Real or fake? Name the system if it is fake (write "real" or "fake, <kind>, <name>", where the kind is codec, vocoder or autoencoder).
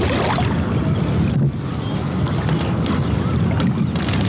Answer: real